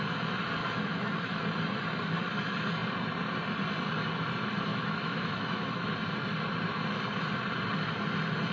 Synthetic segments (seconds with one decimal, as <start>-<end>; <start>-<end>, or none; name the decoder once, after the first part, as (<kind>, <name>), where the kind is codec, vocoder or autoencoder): 0.6-1.4 (autoencoder, DAC-VAE); 4.7-5.9